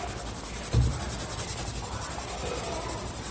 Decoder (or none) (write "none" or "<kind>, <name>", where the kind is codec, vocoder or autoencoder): none